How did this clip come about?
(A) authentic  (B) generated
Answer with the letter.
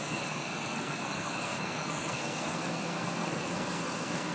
B